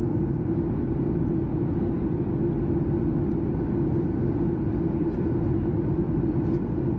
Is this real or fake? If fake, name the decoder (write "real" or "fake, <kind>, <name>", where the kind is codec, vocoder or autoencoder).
real